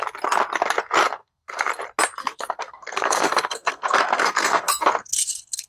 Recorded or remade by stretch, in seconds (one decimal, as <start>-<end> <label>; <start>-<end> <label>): 0.0-1.2 recorded; 1.2-1.7 remade; 1.7-2.2 recorded; 2.2-5.7 remade